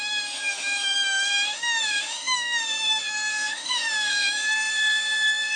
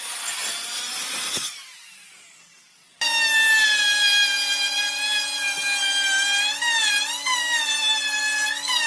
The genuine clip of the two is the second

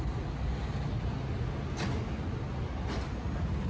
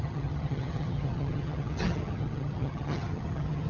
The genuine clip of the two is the first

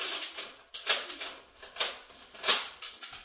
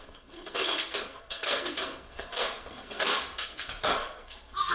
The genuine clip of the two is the first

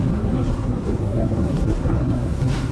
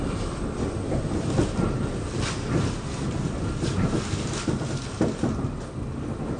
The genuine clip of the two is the second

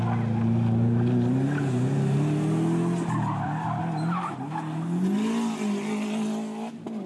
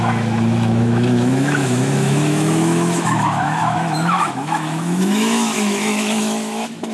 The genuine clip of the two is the first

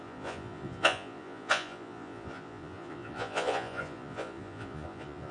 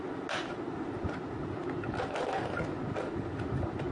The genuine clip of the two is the second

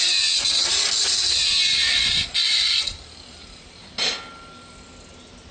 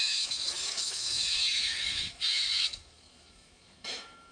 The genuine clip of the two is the first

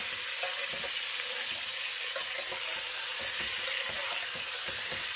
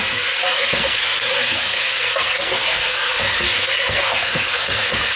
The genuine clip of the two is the first